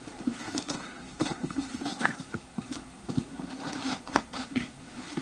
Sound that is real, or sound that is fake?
fake